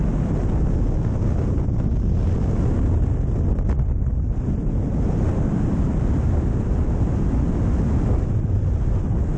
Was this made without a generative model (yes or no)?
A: yes